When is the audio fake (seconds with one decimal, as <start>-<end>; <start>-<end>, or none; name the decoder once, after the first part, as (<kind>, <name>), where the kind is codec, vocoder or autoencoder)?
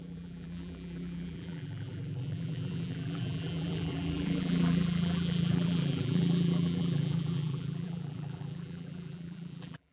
0.0-9.9 (vocoder, BigVGAN v2)